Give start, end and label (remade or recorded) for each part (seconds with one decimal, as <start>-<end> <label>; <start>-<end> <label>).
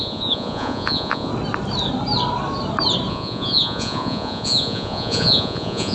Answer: 0.0-1.3 remade; 1.3-3.1 recorded; 3.1-5.9 remade